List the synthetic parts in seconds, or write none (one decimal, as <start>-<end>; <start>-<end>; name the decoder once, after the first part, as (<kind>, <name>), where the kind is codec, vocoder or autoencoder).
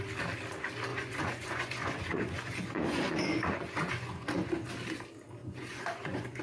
0.9-4.7 (vocoder, Vocos); 5.4-6.4